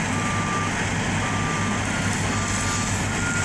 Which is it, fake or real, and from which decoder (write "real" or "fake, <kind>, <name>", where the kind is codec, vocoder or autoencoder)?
real